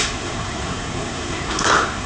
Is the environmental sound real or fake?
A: fake